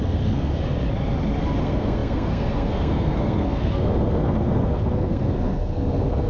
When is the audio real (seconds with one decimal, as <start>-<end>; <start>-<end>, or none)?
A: 0.5-1.6